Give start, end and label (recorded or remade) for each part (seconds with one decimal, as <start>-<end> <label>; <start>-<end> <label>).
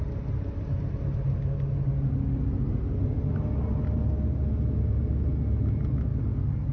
0.0-6.7 recorded